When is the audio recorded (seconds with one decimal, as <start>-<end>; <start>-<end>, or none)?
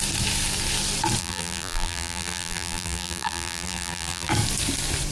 0.0-1.2; 4.3-5.1